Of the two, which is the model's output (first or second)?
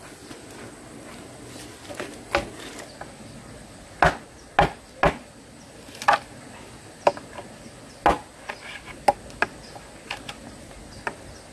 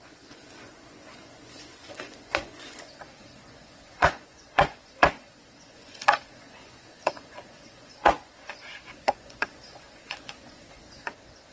second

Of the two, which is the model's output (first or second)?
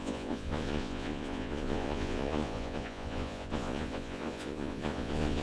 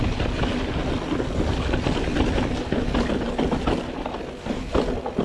first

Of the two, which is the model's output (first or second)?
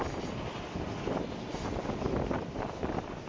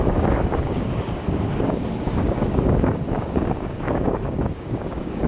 second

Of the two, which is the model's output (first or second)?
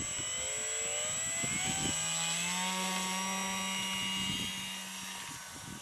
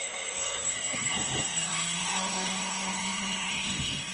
second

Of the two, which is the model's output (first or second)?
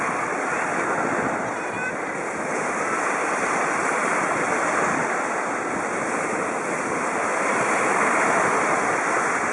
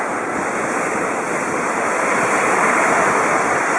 first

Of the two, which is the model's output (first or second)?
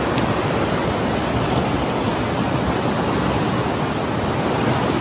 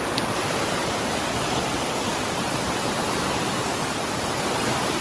second